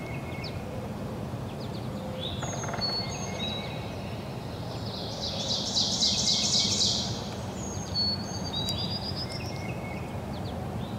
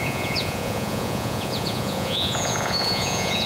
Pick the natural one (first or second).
first